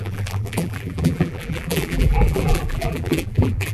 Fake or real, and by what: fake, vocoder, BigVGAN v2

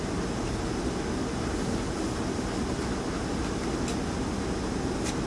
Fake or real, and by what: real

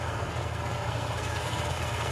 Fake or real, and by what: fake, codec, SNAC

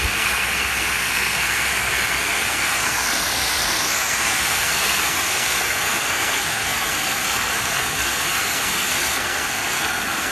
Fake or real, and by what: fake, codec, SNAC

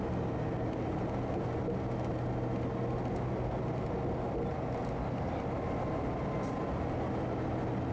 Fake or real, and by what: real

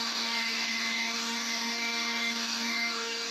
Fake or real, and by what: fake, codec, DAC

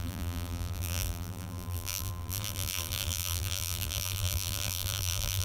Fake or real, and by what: fake, vocoder, BigVGAN v2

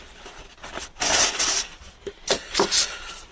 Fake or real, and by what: real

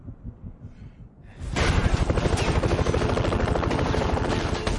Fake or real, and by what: real